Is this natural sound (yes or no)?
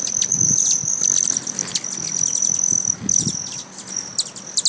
yes